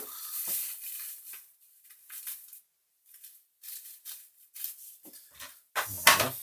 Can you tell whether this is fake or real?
real